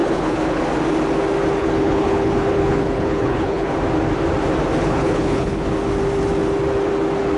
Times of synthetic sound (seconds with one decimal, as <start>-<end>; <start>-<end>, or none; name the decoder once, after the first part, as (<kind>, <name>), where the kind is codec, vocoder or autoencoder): 0.0-0.6 (codec, HILCodec); 1.6-3.7; 4.8-5.7